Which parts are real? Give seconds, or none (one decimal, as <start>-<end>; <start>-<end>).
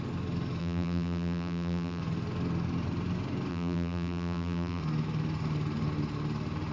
0.0-0.6; 2.0-3.5; 4.8-6.7